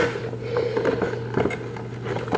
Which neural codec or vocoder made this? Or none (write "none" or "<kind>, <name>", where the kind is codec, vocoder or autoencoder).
none